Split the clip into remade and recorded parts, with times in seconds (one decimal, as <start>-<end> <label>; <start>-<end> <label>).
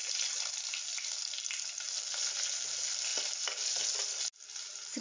0.0-5.0 recorded